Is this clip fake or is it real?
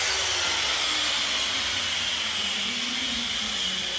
real